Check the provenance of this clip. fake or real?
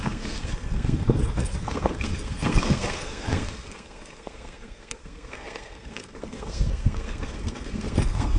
fake